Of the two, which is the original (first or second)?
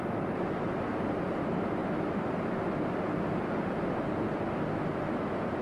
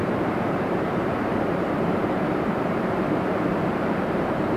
first